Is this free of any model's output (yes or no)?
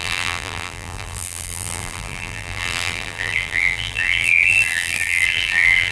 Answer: no